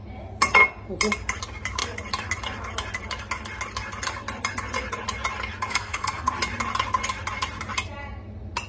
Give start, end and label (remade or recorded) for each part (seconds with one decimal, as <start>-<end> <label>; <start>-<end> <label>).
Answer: 0.0-5.7 recorded; 5.7-6.3 remade; 6.3-8.7 recorded

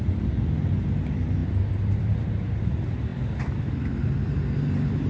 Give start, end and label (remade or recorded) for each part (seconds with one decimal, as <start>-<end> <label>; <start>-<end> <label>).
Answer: 0.0-5.1 recorded

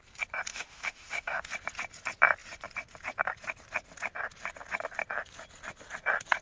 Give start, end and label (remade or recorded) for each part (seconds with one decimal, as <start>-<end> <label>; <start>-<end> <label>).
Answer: 0.0-0.5 recorded; 0.5-1.5 remade; 1.5-6.4 recorded